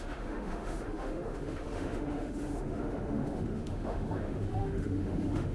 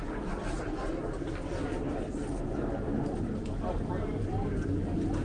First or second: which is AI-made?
first